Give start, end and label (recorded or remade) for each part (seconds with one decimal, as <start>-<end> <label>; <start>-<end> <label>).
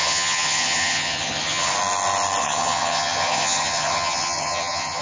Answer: 0.0-1.7 remade; 1.7-2.4 recorded; 2.4-5.0 remade